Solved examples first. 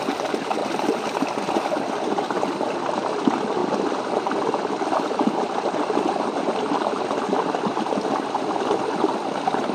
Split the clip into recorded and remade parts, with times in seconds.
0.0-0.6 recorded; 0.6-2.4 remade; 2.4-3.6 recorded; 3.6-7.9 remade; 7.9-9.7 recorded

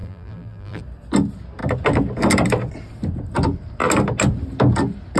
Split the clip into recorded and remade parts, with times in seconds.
0.0-0.8 remade; 0.8-5.2 recorded

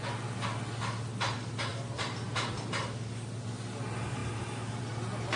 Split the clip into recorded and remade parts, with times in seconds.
0.0-1.7 recorded; 1.7-2.5 remade; 2.5-5.4 recorded

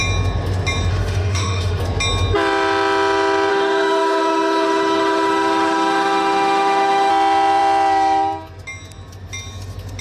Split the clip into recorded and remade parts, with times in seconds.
0.0-0.9 recorded; 0.9-1.8 remade; 1.8-3.5 recorded; 3.5-7.1 remade; 7.1-10.0 recorded

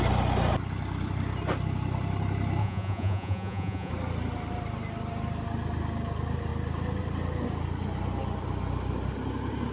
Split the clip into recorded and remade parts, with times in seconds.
0.0-2.6 recorded; 2.6-3.9 remade; 3.9-9.7 recorded

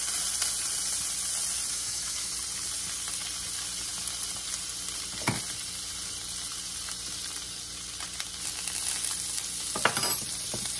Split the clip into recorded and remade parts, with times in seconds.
0.0-1.7 recorded; 1.7-2.3 remade; 2.3-10.8 recorded

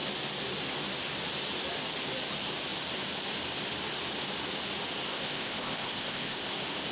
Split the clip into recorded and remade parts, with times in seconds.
0.0-5.1 recorded; 5.1-6.5 remade; 6.5-6.9 recorded

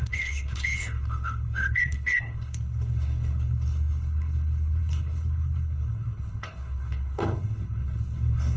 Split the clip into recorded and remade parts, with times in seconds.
0.0-8.6 remade